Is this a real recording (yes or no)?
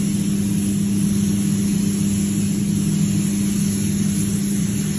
yes